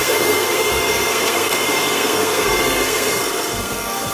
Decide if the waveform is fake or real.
fake